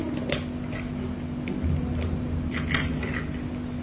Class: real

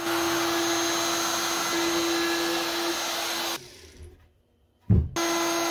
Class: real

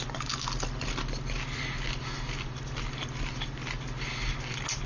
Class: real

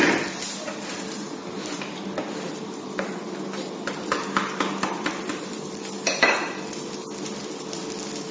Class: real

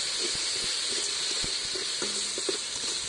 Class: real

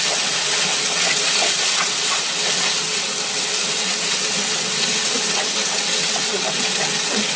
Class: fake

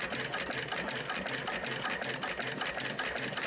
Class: real